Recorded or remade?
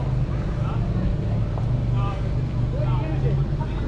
recorded